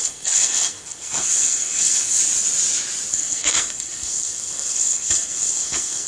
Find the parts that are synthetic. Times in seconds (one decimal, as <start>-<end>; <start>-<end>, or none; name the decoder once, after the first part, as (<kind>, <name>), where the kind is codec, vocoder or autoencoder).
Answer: 0.0-2.2 (codec, SNAC); 3.1-6.1